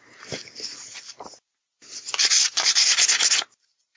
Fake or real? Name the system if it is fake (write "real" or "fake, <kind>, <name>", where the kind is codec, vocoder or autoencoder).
real